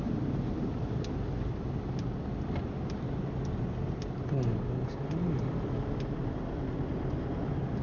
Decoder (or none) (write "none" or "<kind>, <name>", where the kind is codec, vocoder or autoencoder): none